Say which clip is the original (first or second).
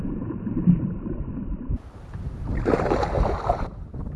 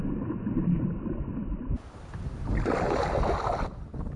second